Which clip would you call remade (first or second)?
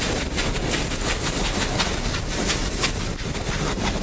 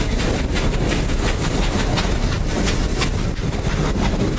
first